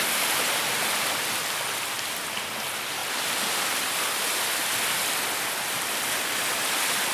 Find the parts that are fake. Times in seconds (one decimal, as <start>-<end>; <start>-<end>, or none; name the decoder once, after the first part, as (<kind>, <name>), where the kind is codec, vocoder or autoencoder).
none